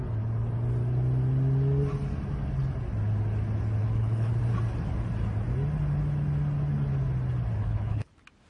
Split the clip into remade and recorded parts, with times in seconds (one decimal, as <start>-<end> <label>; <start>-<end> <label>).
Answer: 0.0-3.8 recorded; 3.8-4.4 remade; 4.4-7.6 recorded; 7.6-8.1 remade; 8.1-8.5 recorded